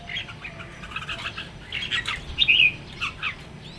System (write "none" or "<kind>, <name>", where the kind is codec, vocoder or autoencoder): none